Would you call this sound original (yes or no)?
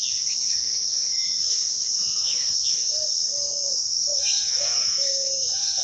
no